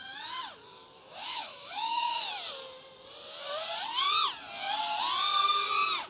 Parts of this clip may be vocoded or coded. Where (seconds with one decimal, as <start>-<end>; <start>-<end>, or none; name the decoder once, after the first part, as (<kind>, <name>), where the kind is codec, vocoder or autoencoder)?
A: 1.3-2.3 (autoencoder, DAC-VAE)